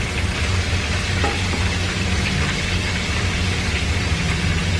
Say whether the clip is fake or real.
real